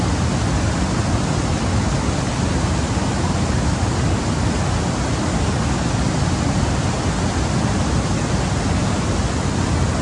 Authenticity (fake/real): real